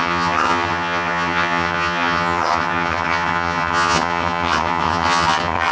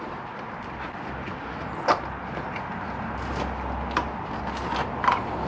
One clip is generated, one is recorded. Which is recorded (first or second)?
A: second